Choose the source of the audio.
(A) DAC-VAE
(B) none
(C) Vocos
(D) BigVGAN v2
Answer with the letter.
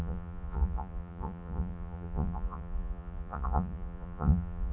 C